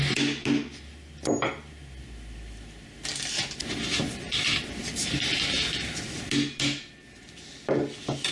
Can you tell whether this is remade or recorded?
recorded